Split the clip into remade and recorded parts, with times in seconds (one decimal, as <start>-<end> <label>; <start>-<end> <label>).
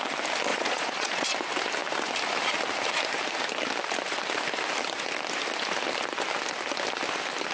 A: 0.0-0.5 recorded; 0.5-1.3 remade; 1.3-7.5 recorded